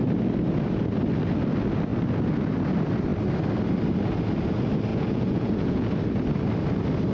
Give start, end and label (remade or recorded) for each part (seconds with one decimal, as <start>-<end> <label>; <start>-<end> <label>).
0.0-4.9 recorded; 4.9-5.9 remade; 5.9-7.1 recorded